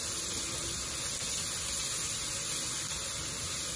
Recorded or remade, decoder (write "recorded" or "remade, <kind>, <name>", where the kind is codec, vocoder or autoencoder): recorded